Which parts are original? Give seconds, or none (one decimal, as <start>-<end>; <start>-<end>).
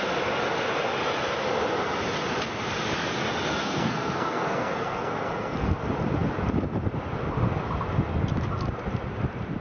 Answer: 0.0-3.6; 5.8-9.6